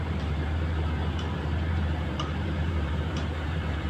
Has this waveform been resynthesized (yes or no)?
yes